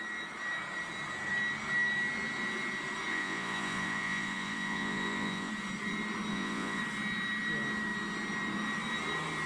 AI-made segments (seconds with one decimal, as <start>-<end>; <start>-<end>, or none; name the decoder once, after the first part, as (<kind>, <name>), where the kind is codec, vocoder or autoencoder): 3.1-5.5 (vocoder, Vocos); 6.3-6.8